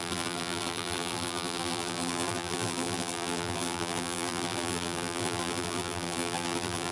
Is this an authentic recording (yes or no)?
no